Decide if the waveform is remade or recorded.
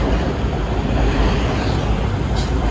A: recorded